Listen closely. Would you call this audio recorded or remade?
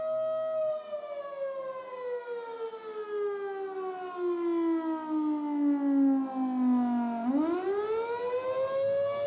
recorded